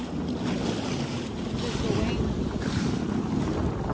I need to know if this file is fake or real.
real